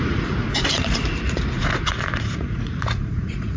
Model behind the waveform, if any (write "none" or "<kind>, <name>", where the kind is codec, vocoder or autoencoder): vocoder, Vocos